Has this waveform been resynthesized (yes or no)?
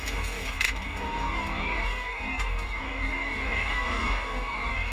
yes